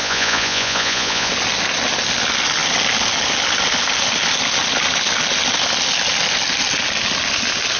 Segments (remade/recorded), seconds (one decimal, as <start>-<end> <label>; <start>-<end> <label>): 0.0-1.3 remade; 1.3-7.8 recorded